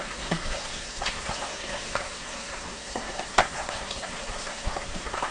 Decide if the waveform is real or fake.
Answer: fake